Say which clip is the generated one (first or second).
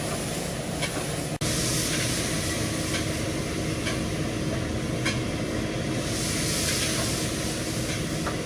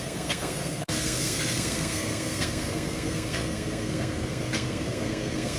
second